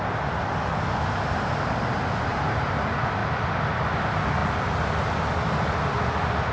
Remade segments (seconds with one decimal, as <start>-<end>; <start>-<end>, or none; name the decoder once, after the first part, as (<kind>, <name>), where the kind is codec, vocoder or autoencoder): none